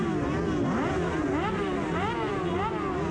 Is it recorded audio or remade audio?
recorded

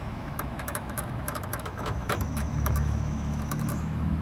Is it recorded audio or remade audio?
remade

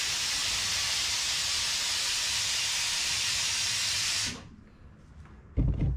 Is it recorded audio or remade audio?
recorded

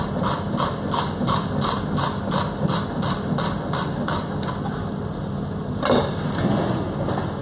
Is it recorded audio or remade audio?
recorded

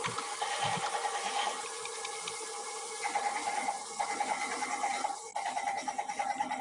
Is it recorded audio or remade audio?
recorded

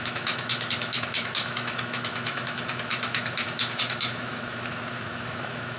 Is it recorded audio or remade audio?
remade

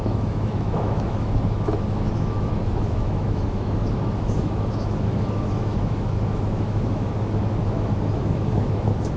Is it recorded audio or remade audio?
remade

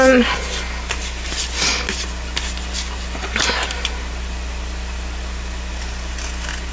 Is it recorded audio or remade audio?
recorded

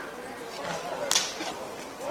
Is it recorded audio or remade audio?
recorded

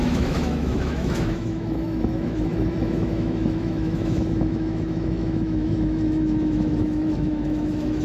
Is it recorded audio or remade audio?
remade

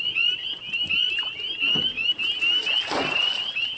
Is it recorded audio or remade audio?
recorded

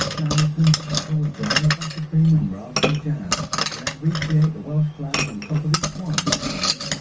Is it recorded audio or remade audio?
recorded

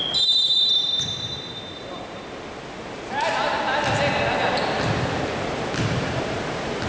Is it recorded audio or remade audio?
recorded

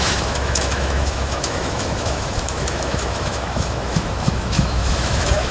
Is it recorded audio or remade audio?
remade